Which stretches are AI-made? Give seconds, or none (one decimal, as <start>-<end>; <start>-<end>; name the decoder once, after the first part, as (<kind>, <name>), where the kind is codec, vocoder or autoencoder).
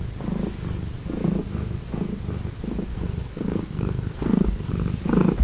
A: 2.9-4.7 (codec, SNAC)